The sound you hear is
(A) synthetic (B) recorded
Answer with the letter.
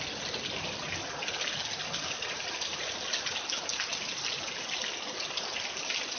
B